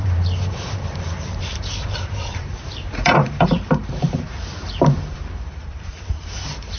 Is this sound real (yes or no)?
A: no